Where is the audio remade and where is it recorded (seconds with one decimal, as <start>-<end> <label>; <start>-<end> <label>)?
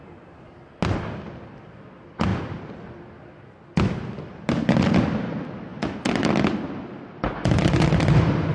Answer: 0.0-5.7 recorded; 5.7-6.8 remade; 6.8-8.5 recorded